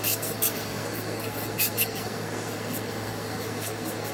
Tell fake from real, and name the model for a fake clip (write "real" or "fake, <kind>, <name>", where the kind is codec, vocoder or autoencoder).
fake, codec, SNAC